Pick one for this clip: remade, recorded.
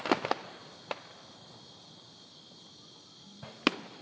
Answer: recorded